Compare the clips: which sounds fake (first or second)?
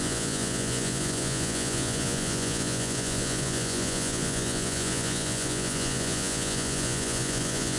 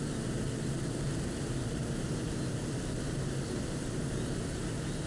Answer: first